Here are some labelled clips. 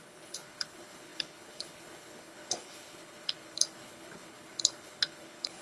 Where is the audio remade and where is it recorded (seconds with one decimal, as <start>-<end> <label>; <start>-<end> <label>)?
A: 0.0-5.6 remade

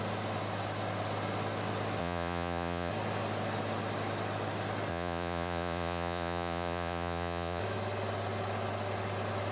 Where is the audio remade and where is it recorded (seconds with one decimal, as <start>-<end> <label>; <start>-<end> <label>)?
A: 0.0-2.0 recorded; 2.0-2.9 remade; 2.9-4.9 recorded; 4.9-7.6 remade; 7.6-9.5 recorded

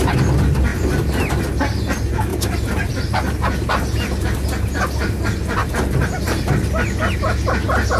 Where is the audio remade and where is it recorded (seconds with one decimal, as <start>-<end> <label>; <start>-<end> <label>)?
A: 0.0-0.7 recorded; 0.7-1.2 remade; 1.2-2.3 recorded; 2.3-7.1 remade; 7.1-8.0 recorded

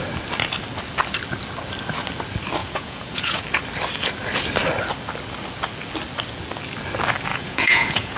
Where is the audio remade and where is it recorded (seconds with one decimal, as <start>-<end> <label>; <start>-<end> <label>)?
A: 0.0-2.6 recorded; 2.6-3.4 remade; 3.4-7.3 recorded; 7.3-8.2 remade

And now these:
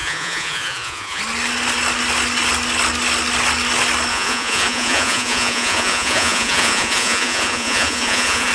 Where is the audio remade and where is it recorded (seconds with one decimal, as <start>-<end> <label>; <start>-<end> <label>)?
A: 0.0-1.2 remade; 1.2-4.1 recorded; 4.1-8.5 remade

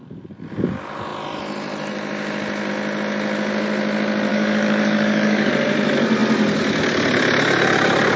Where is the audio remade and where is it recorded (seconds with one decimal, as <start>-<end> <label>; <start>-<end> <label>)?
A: 0.0-4.3 recorded; 4.3-5.5 remade; 5.5-8.2 recorded